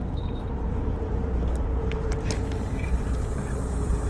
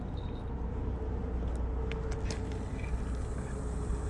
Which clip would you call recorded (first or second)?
second